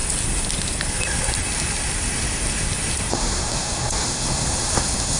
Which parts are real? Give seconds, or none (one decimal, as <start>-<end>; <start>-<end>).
0.0-3.1